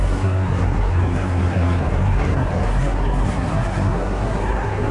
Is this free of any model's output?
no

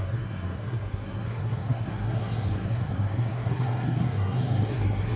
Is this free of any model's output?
no